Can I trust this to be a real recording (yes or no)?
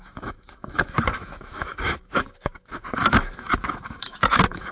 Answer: no